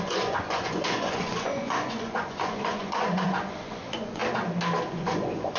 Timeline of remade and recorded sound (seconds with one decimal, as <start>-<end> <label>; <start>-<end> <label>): 0.0-4.2 remade; 4.2-4.9 recorded; 4.9-5.6 remade